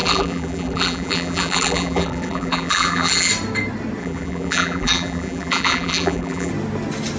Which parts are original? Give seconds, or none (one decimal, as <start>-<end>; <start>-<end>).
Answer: 3.3-4.0; 6.5-7.2